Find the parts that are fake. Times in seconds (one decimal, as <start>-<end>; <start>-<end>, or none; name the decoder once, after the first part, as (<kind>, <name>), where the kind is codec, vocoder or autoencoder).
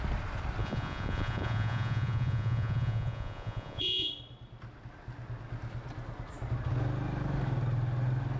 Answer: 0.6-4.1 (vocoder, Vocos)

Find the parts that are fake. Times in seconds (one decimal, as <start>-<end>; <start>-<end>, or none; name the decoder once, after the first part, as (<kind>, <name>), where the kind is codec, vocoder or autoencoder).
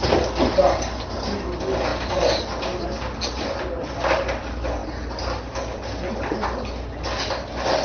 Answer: none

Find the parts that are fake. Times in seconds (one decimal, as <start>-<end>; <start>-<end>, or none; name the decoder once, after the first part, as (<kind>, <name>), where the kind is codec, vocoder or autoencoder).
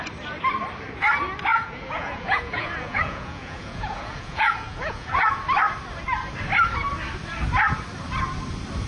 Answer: 1.5-5.4 (vocoder, Vocos)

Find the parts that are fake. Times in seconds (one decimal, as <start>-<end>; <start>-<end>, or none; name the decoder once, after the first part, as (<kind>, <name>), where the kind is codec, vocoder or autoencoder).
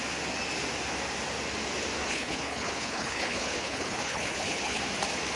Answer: 2.0-4.8 (codec, HILCodec)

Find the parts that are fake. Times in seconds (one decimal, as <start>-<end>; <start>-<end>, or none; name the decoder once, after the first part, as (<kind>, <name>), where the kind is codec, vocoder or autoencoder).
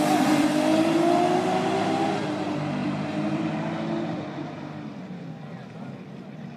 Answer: 2.8-3.5 (vocoder, BigVGAN v2)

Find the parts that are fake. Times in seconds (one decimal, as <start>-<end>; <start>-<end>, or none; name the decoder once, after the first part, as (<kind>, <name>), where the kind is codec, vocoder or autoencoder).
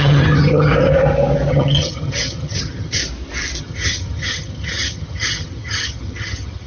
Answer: 0.0-0.7 (vocoder, HiFi-GAN); 1.5-3.0; 3.6-6.7